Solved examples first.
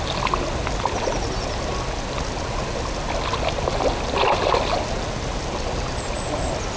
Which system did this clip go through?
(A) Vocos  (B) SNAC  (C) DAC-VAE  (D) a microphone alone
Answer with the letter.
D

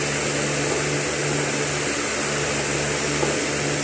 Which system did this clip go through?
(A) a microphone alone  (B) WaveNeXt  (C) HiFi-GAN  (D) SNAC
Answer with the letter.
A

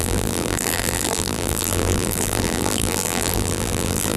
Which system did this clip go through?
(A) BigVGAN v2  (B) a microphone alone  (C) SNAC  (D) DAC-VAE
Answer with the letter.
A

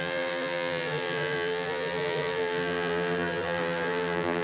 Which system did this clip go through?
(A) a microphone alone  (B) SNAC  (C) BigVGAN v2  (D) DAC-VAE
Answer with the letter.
C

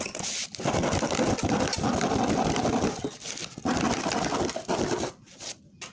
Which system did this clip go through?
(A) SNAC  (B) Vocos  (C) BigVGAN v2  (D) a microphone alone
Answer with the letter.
D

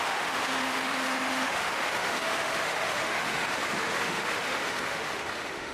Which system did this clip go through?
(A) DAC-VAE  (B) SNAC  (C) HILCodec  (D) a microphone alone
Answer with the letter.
A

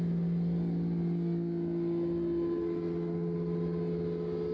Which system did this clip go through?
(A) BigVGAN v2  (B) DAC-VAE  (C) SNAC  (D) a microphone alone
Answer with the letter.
D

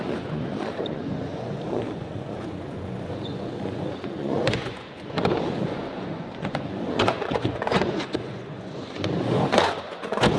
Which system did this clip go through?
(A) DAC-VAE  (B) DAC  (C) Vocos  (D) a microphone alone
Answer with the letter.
C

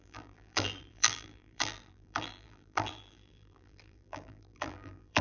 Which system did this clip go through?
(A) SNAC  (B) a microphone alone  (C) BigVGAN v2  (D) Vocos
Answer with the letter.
C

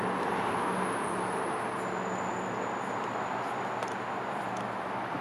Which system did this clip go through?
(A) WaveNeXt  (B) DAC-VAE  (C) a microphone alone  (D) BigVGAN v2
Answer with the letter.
C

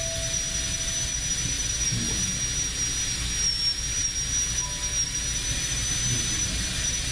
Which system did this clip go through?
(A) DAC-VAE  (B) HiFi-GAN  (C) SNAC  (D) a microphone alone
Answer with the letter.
D